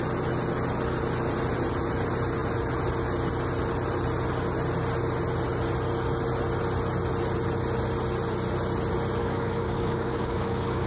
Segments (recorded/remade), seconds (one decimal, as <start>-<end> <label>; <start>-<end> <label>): 0.0-9.2 recorded; 9.2-10.9 remade